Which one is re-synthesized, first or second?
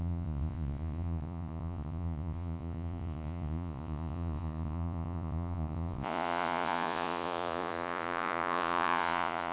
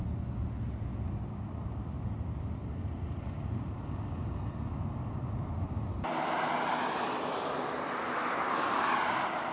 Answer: first